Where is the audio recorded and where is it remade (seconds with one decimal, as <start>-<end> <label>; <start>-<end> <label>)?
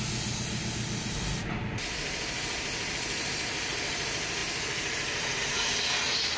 0.0-6.4 recorded